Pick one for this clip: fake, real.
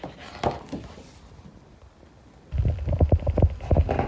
real